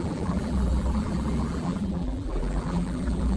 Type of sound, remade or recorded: remade